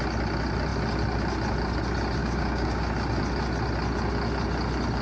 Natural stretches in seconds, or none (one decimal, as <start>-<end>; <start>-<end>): 0.0-2.2; 2.8-5.0